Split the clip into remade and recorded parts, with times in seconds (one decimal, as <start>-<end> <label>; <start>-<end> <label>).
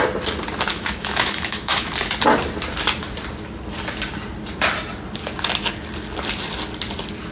0.0-0.7 recorded; 0.7-1.9 remade; 1.9-7.3 recorded